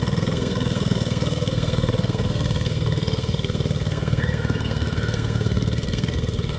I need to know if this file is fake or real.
fake